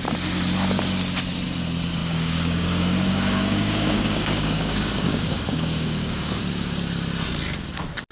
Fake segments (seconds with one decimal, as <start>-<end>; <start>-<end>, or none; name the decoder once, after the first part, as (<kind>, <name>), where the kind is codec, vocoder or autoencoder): 2.0-6.4 (codec, DAC)